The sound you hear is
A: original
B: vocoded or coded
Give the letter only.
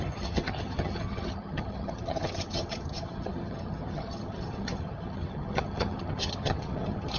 B